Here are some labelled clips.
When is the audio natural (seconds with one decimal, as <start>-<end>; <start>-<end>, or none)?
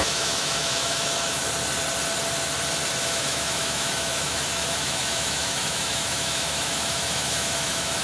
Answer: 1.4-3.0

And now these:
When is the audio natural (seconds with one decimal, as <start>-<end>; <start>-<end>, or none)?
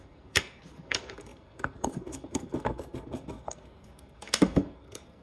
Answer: none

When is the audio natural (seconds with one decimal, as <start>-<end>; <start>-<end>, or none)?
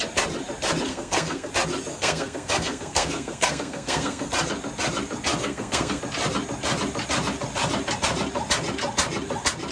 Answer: 0.0-0.9; 1.5-1.9; 4.3-5.4; 6.0-9.7